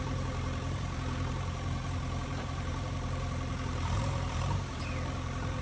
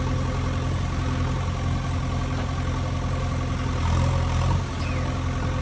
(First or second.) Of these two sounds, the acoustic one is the second